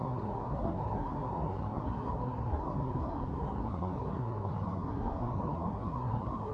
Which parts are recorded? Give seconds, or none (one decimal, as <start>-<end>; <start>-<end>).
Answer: none